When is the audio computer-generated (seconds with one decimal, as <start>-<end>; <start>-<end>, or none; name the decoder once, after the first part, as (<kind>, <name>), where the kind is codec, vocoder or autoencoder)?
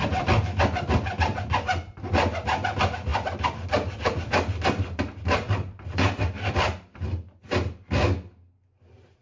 none